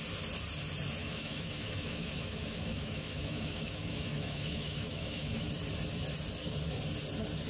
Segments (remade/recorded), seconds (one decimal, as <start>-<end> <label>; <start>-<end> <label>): 0.0-1.0 recorded; 1.0-5.5 remade; 5.5-7.5 recorded